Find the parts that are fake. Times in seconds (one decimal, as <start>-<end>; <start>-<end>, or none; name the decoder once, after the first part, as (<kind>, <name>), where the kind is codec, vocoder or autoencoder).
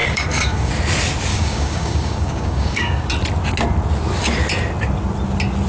0.0-0.7 (codec, DAC); 1.3-3.1